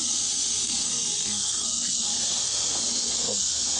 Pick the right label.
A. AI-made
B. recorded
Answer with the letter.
A